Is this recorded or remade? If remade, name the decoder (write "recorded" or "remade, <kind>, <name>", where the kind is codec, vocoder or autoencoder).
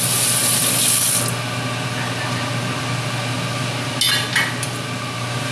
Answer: recorded